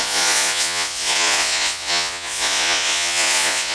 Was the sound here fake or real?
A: fake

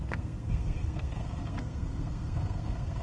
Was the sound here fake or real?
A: fake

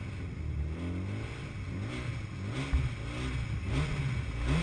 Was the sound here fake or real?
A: real